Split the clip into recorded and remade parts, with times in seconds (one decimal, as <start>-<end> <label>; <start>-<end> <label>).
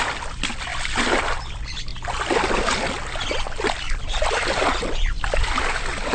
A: 0.0-6.1 recorded